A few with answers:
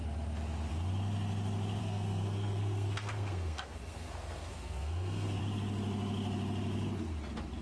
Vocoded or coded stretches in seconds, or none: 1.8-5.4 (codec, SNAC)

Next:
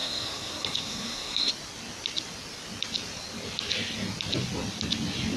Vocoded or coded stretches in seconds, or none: 0.0-1.5 (codec, SNAC)

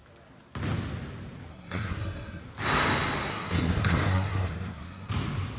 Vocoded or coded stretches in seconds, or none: 1.5-2.4 (codec, SNAC); 3.3-5.1

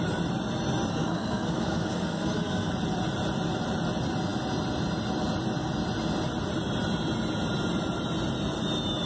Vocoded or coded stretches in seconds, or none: 0.9-2.7 (codec, SNAC)

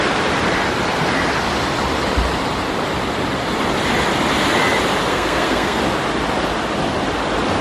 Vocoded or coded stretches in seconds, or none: 5.1-5.8 (codec, SNAC)

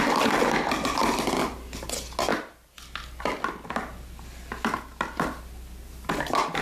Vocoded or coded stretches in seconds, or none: none

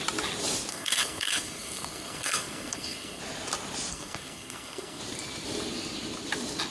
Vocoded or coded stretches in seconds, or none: 0.7-3.2 (codec, SNAC); 3.9-5.0